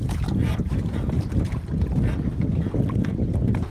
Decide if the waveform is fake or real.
real